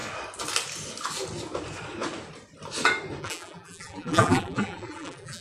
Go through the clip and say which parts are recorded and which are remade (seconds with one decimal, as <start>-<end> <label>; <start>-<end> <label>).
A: 0.0-3.2 recorded; 3.2-5.4 remade